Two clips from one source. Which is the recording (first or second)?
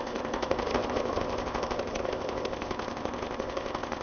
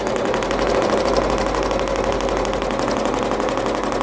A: second